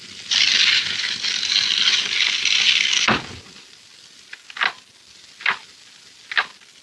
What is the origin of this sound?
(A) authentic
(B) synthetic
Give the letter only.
A